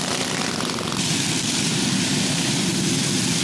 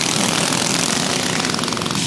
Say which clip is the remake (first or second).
first